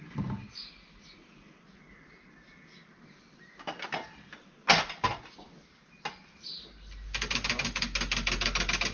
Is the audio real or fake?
real